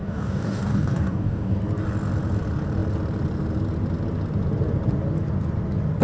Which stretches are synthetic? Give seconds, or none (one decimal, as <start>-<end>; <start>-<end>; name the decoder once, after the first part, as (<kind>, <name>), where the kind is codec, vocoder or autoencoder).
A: 0.0-1.6 (codec, DAC)